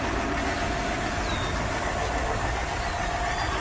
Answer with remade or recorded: recorded